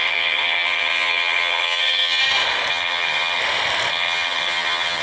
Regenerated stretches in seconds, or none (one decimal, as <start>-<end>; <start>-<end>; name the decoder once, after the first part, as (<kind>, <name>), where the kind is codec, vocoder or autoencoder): 0.0-2.2 (vocoder, HiFi-GAN); 2.7-3.4; 3.9-5.0